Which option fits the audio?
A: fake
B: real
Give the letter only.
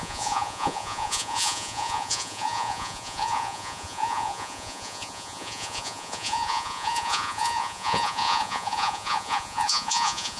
A